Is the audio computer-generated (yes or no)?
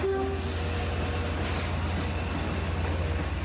no